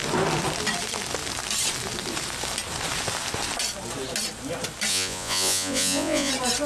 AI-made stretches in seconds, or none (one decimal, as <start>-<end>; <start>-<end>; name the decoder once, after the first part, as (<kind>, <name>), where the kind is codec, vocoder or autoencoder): 4.9-6.3 (vocoder, Vocos)